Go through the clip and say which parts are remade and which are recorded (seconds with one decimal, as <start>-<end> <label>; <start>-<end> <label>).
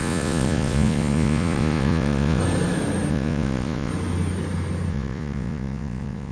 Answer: 0.0-2.4 remade; 2.4-3.1 recorded; 3.1-3.9 remade; 3.9-4.9 recorded; 4.9-6.3 remade